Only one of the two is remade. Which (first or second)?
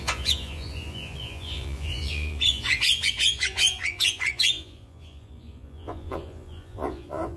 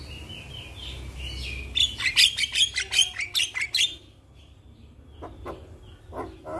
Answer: first